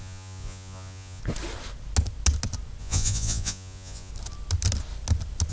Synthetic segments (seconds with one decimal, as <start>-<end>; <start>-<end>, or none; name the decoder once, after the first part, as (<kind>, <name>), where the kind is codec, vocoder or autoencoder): 0.0-1.2 (vocoder, Vocos); 2.8-4.1